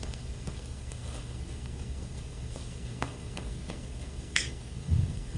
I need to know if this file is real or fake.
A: fake